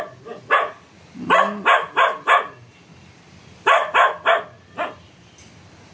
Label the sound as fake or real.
real